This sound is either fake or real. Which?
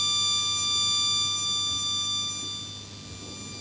real